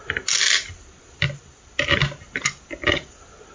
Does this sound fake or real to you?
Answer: real